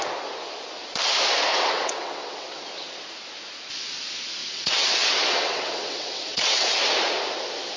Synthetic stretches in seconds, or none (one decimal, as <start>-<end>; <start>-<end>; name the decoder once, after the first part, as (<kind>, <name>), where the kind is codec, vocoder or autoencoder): 1.5-2.6 (vocoder, WaveNeXt); 4.4-6.8